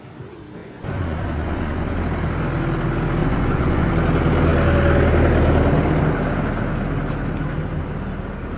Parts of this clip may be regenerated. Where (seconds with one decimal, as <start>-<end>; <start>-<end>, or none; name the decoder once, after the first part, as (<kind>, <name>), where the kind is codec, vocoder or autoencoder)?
0.6-2.0 (vocoder, Vocos); 3.2-3.9